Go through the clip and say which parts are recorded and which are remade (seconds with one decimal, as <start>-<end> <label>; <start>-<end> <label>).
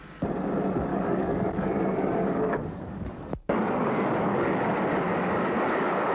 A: 0.0-0.9 recorded; 0.9-4.6 remade; 4.6-5.1 recorded; 5.1-6.1 remade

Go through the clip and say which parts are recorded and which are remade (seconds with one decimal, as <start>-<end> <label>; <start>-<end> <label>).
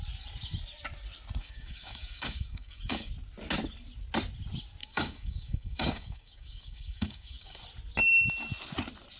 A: 0.0-1.4 recorded; 1.4-3.1 remade; 3.1-4.8 recorded; 4.8-7.6 remade; 7.6-9.2 recorded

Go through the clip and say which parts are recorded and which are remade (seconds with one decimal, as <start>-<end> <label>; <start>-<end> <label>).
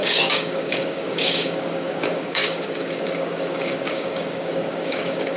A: 0.0-5.4 remade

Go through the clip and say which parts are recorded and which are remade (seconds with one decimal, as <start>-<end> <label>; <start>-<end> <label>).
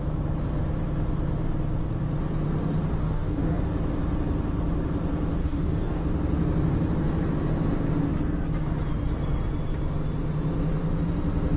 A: 0.0-3.0 recorded; 3.0-3.6 remade; 3.6-5.4 recorded; 5.4-6.0 remade; 6.0-11.6 recorded